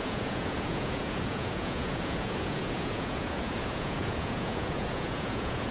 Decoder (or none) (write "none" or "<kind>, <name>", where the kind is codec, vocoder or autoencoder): vocoder, Vocos